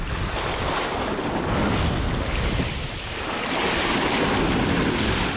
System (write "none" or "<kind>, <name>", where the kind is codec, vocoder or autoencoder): none